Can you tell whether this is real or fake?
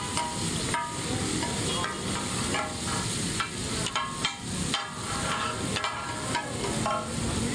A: real